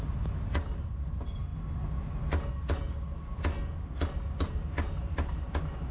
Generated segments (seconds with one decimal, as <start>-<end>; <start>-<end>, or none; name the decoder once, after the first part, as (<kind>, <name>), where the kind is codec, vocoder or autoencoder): none